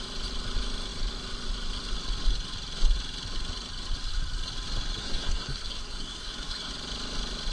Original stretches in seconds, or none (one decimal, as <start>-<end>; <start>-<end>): 0.0-5.0; 6.7-7.5